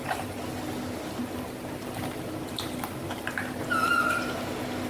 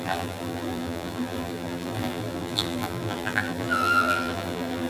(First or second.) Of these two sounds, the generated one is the second